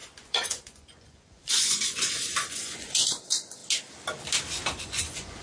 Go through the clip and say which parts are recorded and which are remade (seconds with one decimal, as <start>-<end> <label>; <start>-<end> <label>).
0.0-3.6 remade; 3.6-4.8 recorded; 4.8-5.4 remade